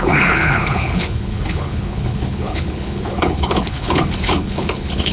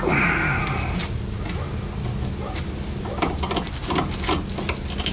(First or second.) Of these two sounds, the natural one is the second